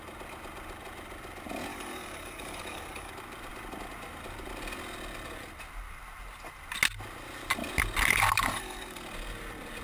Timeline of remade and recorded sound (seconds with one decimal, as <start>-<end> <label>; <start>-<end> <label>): 0.0-1.7 recorded; 1.7-3.1 remade; 3.1-8.5 recorded; 8.5-9.0 remade; 9.0-9.8 recorded